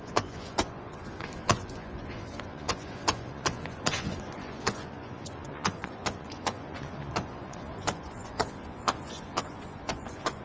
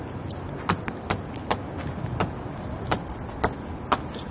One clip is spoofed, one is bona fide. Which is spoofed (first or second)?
first